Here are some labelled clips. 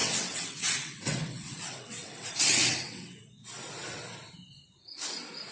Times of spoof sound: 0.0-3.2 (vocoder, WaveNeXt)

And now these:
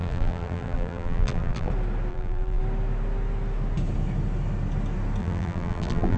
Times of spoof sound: 0.0-1.7 (vocoder, BigVGAN v2); 2.1-2.6; 5.2-6.2

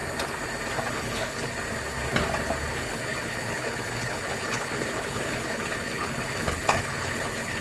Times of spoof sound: 0.9-1.5 (codec, HILCodec); 2.7-7.6

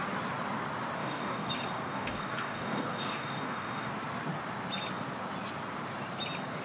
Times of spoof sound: 1.0-1.5 (codec, DAC); 1.9-3.9